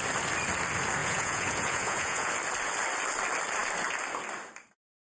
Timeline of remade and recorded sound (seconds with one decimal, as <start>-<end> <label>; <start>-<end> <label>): 0.0-1.0 recorded; 1.0-2.3 remade; 2.3-5.1 recorded